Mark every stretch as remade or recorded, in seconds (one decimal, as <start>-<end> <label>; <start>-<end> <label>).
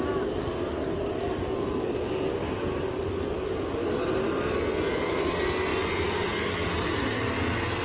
0.0-7.8 recorded